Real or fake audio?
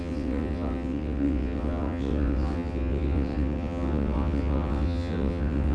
fake